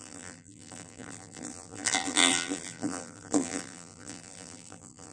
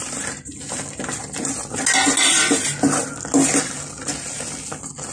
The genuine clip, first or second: second